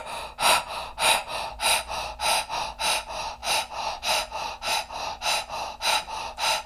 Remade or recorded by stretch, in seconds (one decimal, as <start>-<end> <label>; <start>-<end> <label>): 0.0-6.7 recorded